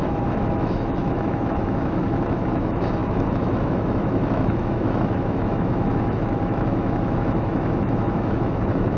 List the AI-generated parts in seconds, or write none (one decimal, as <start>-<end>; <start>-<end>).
0.0-9.0